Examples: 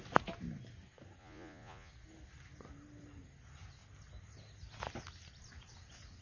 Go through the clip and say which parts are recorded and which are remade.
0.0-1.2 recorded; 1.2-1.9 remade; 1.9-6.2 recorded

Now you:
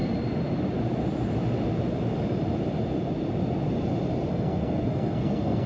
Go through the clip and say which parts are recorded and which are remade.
0.0-4.3 recorded; 4.3-5.7 remade

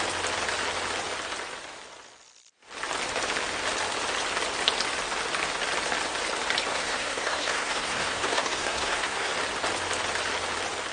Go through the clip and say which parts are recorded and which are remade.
0.0-6.7 recorded; 6.7-9.3 remade; 9.3-10.9 recorded

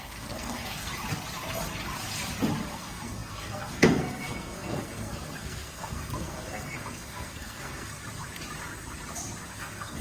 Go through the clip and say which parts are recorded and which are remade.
0.0-0.9 remade; 0.9-2.7 recorded; 2.7-8.0 remade; 8.0-9.5 recorded; 9.5-10.0 remade

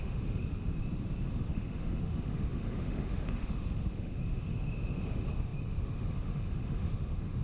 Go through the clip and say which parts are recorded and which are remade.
0.0-0.7 remade; 0.7-1.2 recorded; 1.2-7.4 remade